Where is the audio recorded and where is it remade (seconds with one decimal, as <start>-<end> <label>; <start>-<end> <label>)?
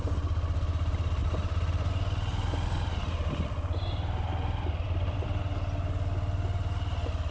0.0-1.2 recorded; 1.2-1.9 remade; 1.9-2.3 recorded; 2.3-5.4 remade; 5.4-7.3 recorded